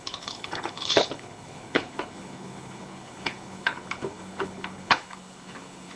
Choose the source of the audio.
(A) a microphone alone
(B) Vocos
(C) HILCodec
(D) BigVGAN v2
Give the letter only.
C